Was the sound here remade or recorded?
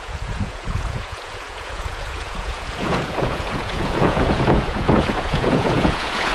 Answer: remade